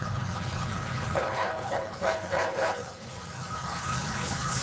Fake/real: fake